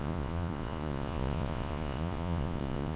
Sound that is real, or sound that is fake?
fake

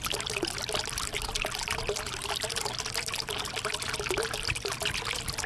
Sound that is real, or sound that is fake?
real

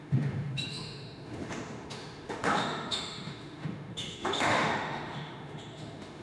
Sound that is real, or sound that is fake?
fake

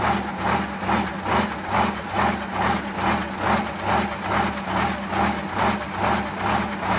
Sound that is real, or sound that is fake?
real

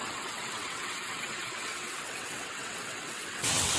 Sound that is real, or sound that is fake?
fake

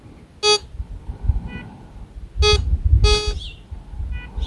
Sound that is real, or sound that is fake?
real